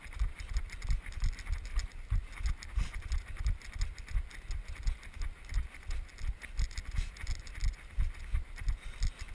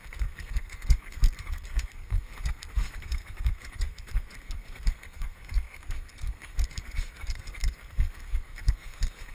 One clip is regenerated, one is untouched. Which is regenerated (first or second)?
second